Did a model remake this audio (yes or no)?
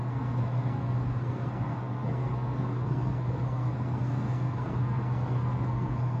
yes